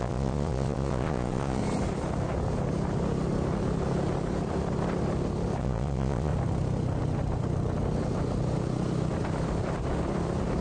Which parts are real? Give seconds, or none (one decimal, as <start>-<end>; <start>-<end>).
1.6-5.6; 6.3-10.6

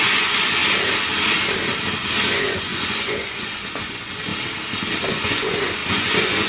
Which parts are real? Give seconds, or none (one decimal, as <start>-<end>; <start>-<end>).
0.6-2.3; 4.3-5.1

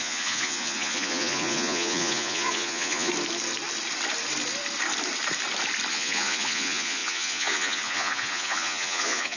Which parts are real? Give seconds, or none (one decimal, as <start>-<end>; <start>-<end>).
3.1-5.9

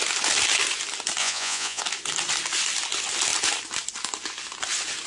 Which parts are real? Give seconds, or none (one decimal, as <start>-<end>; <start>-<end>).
0.0-1.2; 1.8-5.1